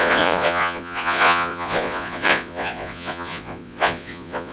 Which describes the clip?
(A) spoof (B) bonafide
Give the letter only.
A